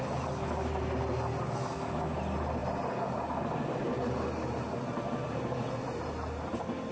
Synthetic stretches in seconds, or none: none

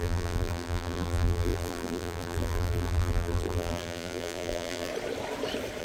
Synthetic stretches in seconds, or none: 0.0-4.9

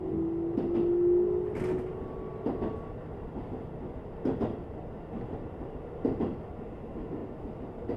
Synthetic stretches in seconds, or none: none

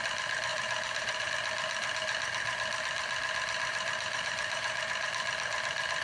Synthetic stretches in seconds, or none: 0.5-1.3; 3.7-5.1